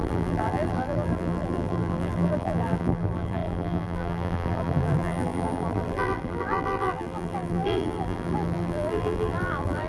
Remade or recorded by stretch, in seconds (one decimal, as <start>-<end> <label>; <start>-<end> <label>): 0.0-9.9 remade